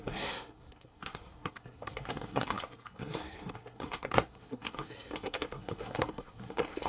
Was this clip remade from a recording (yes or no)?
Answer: yes